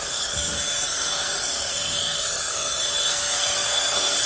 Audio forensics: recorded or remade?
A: remade